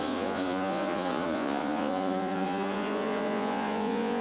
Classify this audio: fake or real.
fake